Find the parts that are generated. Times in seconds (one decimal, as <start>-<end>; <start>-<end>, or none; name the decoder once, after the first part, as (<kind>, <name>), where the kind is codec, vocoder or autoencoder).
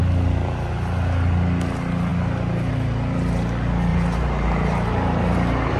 3.9-5.8 (vocoder, BigVGAN v2)